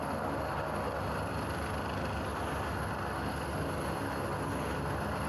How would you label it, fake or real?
real